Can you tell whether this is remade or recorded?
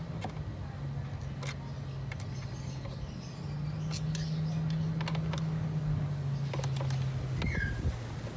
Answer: recorded